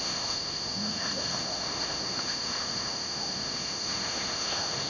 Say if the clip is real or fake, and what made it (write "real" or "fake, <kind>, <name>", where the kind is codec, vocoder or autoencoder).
fake, autoencoder, DAC-VAE